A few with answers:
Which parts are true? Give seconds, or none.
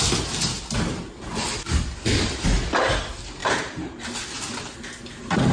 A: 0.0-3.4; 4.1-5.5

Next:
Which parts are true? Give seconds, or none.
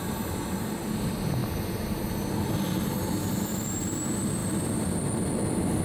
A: 0.0-4.4